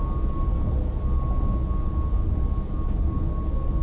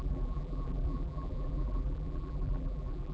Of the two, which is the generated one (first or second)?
second